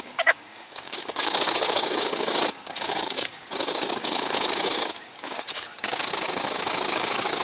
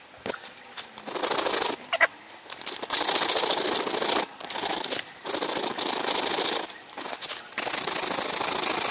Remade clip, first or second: first